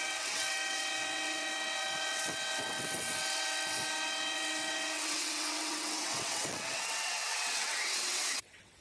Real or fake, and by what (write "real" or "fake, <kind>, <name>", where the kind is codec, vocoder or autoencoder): fake, vocoder, WaveNeXt